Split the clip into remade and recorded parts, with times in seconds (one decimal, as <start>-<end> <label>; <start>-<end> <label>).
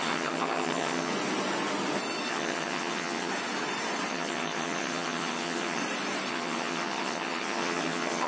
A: 0.0-1.1 remade; 1.1-2.3 recorded; 2.3-3.3 remade; 3.3-4.1 recorded; 4.1-5.8 remade; 5.8-6.3 recorded; 6.3-8.3 remade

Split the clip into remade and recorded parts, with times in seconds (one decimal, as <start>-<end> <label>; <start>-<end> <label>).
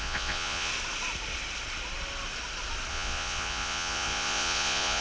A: 0.0-0.7 remade; 0.7-2.9 recorded; 2.9-5.0 remade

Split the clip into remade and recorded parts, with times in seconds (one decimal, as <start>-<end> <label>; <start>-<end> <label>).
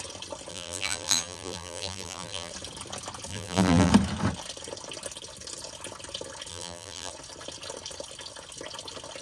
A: 0.0-0.5 recorded; 0.5-2.5 remade; 2.5-3.3 recorded; 3.3-3.9 remade; 3.9-6.5 recorded; 6.5-7.1 remade; 7.1-9.2 recorded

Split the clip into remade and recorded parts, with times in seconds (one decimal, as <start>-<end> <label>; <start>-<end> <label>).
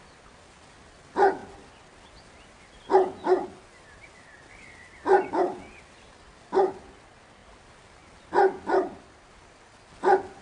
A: 0.0-10.4 recorded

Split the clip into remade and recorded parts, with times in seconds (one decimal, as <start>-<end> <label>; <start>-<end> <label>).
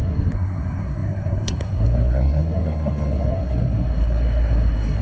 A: 0.0-5.0 remade